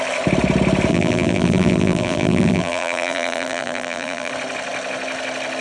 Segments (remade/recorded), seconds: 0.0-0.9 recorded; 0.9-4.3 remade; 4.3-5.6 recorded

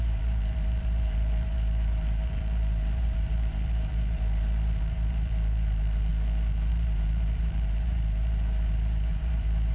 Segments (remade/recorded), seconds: 0.0-6.1 remade; 6.1-6.7 recorded; 6.7-9.7 remade